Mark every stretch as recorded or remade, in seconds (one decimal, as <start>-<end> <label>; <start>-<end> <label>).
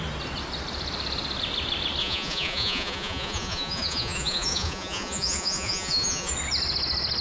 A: 0.0-2.0 recorded; 2.0-6.3 remade; 6.3-7.2 recorded